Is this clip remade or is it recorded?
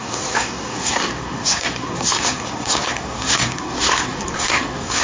remade